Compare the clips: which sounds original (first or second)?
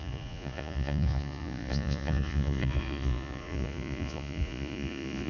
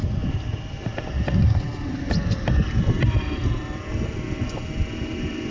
second